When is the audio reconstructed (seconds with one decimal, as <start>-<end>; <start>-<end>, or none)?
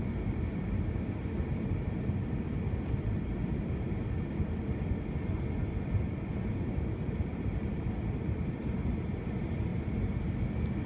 0.0-9.7; 10.4-10.9